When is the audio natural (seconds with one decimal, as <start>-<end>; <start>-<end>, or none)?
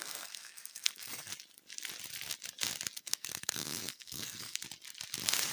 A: 1.3-3.0; 4.6-5.5